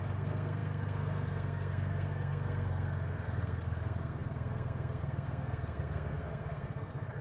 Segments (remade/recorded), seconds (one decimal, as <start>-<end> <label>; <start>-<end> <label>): 0.0-7.2 remade